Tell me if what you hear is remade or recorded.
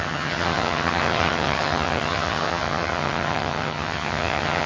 remade